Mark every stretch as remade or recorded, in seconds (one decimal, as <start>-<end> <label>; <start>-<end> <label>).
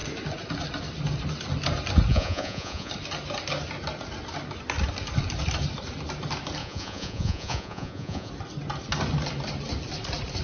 0.0-2.1 recorded; 2.1-2.9 remade; 2.9-6.6 recorded; 6.6-8.3 remade; 8.3-10.4 recorded